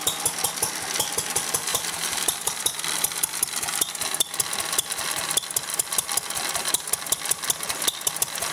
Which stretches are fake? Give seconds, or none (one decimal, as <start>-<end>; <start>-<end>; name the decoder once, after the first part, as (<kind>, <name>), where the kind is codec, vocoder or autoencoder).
1.7-2.2 (vocoder, BigVGAN v2)